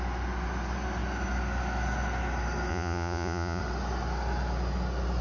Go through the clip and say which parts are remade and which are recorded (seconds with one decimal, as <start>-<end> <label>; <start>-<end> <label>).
0.0-2.7 recorded; 2.7-3.6 remade; 3.6-5.2 recorded